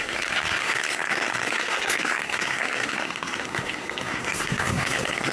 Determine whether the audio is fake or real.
fake